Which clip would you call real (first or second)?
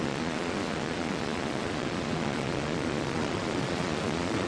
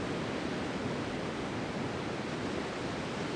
second